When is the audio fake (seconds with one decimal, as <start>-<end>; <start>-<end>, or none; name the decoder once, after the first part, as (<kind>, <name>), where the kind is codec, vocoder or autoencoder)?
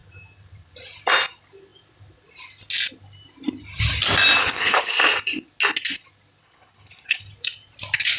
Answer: 4.4-4.9 (codec, HILCodec); 6.4-7.2